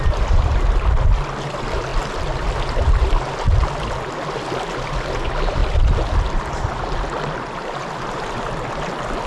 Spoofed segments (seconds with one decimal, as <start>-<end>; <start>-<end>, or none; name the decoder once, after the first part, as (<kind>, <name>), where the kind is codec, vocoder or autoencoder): none